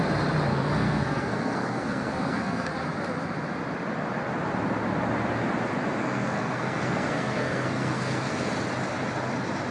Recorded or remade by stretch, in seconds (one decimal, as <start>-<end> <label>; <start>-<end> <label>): 0.0-0.5 recorded; 0.5-2.7 remade; 2.7-6.0 recorded; 6.0-8.5 remade; 8.5-9.7 recorded